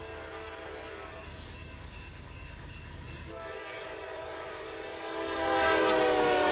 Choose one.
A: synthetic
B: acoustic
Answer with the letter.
A